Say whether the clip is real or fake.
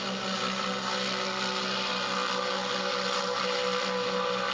real